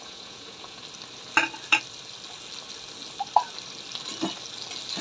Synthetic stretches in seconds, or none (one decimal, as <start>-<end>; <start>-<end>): 0.0-0.8